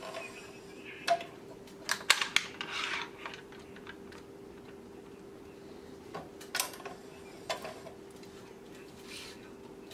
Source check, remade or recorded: recorded